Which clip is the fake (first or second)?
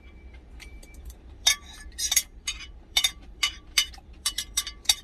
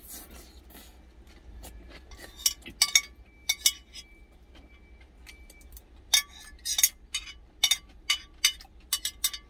first